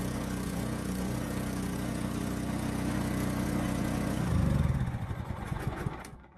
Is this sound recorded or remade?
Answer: remade